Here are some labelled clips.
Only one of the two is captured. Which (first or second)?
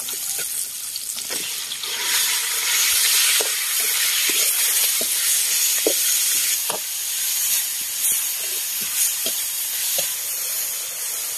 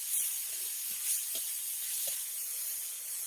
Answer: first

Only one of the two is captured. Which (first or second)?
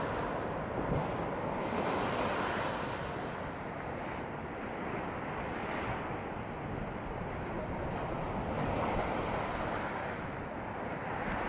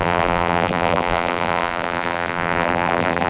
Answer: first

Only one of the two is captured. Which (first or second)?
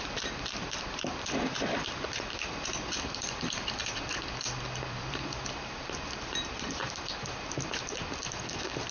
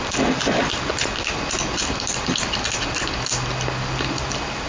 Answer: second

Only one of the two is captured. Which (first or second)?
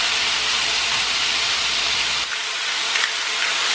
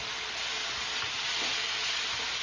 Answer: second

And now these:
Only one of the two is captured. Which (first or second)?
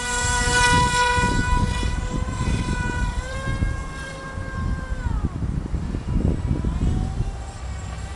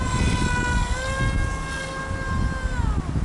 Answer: second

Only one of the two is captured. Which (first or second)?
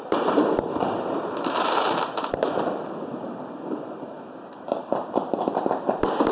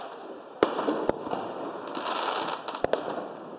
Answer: second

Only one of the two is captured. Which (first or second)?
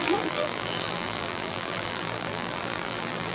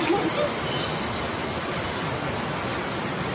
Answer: second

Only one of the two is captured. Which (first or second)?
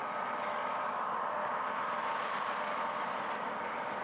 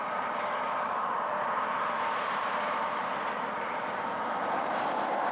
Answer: first